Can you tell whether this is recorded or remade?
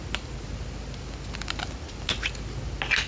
recorded